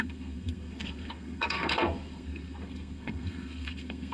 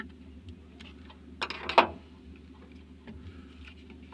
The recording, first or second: second